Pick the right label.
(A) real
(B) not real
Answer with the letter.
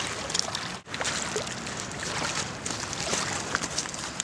A